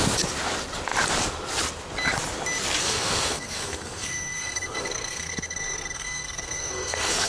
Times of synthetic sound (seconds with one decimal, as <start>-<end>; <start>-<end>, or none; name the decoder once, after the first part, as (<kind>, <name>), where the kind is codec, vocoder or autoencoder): 2.8-7.3 (codec, SNAC)